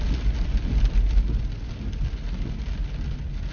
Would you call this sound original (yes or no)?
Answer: yes